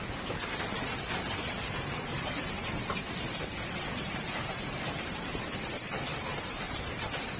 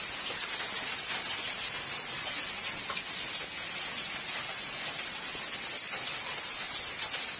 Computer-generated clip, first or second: first